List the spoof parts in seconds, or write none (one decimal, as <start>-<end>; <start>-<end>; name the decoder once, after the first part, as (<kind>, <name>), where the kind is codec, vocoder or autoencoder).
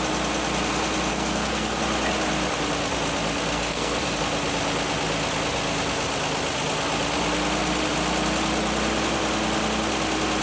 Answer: 1.1-1.8 (codec, SNAC); 3.5-4.2